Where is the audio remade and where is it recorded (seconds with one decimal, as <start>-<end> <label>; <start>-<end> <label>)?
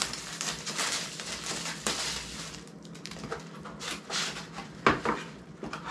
0.0-5.9 recorded